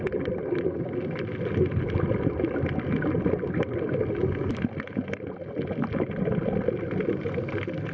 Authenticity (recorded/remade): recorded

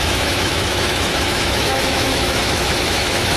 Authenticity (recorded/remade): remade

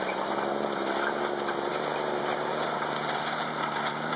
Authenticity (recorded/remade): recorded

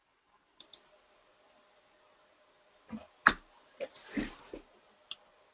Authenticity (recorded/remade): recorded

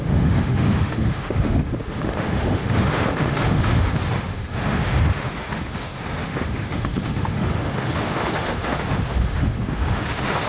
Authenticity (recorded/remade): remade